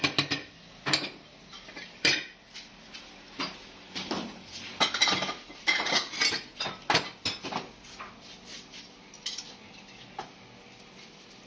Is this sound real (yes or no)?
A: yes